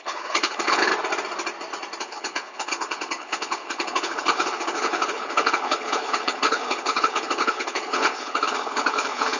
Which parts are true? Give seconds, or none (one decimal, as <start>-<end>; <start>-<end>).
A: 0.9-2.0